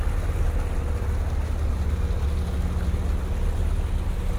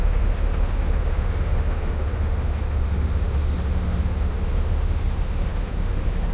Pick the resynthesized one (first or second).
second